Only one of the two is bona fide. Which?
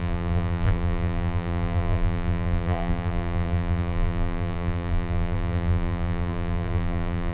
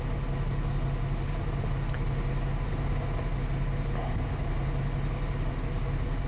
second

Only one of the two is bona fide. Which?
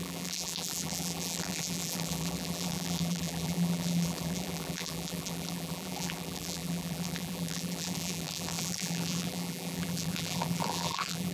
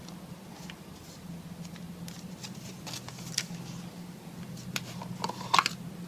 second